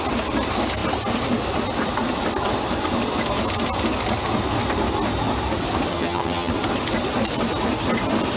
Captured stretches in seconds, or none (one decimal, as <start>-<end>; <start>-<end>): 0.0-5.9; 6.5-8.4